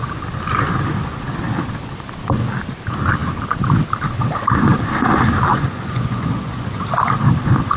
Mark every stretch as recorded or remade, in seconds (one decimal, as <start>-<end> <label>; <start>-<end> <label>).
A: 0.0-5.5 recorded; 5.5-6.8 remade; 6.8-7.8 recorded